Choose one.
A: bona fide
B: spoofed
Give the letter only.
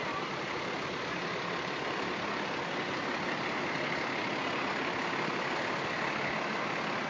A